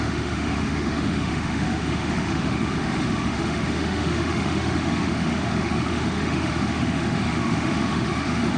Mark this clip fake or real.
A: fake